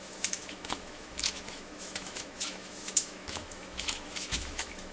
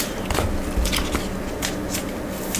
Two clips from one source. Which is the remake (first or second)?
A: first